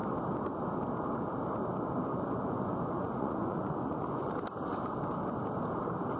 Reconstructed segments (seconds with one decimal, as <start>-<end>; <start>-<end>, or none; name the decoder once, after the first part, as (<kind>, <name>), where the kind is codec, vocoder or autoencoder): 2.1-4.3 (vocoder, Vocos)